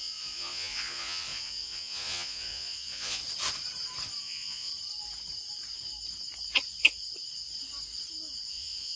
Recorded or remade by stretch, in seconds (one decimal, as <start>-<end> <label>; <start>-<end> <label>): 0.0-3.2 remade; 3.2-4.2 recorded; 4.2-4.7 remade; 4.7-8.5 recorded; 8.5-9.0 remade